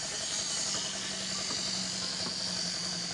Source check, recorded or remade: recorded